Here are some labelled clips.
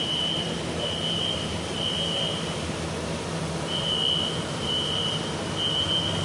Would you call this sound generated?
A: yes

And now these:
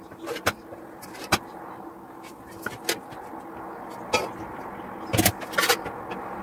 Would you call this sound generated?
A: no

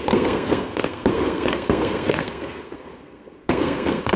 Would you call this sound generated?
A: yes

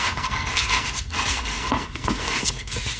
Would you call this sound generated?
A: yes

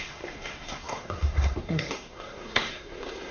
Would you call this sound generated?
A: yes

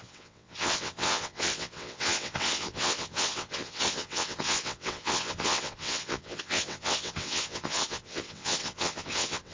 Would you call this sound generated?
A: yes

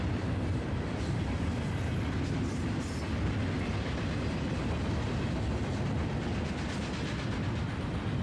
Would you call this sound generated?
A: no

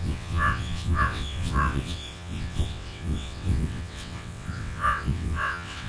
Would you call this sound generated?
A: yes